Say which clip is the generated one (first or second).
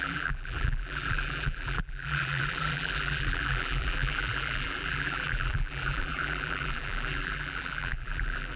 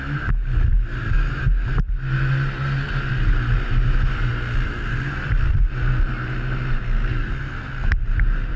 first